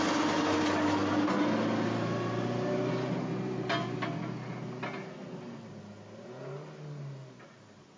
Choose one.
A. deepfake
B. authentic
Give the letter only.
B